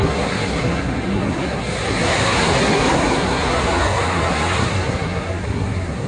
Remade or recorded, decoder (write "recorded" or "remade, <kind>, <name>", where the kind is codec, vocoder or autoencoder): remade, codec, SNAC